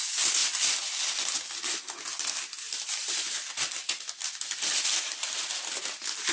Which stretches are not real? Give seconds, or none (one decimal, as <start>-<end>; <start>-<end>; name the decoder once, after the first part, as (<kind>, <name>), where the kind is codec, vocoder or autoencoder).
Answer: 4.9-5.4 (vocoder, BigVGAN v2)